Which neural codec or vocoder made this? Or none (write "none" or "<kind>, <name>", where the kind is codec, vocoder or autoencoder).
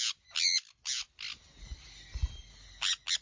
none